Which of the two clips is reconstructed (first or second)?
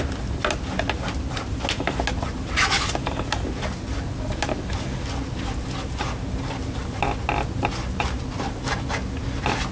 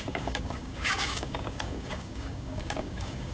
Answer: second